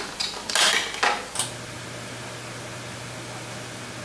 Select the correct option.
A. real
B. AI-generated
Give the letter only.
A